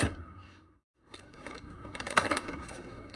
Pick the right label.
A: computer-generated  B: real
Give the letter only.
A